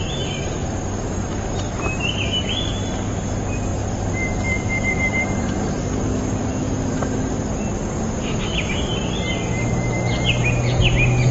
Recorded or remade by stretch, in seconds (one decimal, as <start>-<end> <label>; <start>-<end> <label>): 0.0-3.7 recorded; 3.7-6.7 remade; 6.7-11.3 recorded